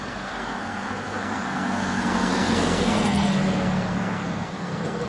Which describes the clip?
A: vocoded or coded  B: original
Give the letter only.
A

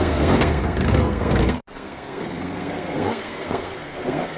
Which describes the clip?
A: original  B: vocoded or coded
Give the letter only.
B